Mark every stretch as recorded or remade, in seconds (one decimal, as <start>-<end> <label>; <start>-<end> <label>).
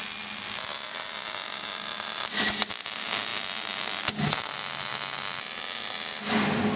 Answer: 0.0-6.8 recorded